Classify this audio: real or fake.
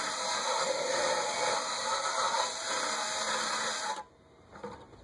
real